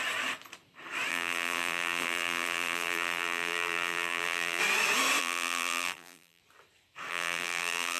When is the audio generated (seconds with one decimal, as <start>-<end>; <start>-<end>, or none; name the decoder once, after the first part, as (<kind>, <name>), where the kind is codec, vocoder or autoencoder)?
1.1-4.6 (vocoder, BigVGAN v2); 5.2-6.4; 7.1-8.0